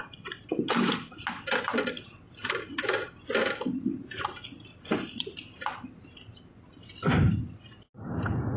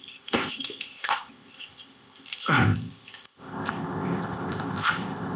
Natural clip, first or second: first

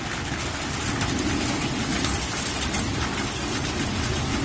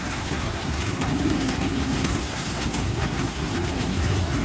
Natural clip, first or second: first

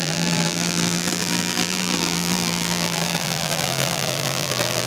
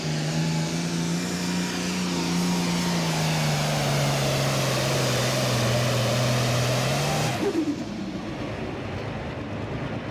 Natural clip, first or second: second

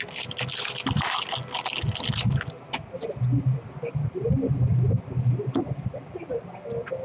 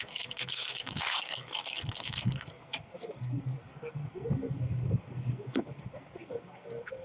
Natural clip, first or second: first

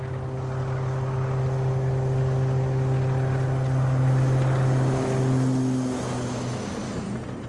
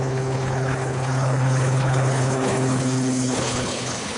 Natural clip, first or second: first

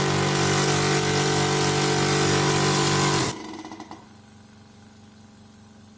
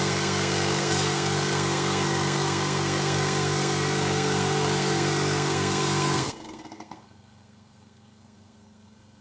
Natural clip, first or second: first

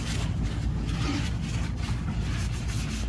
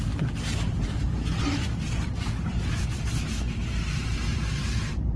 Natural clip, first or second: first